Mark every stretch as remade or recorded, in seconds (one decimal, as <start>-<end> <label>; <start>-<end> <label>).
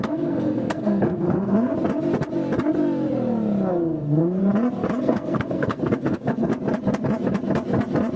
0.0-1.7 remade; 1.7-3.7 recorded; 3.7-4.4 remade; 4.4-5.0 recorded; 5.0-6.5 remade; 6.5-8.2 recorded